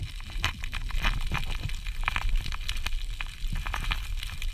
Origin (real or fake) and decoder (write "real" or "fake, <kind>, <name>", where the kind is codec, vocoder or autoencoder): real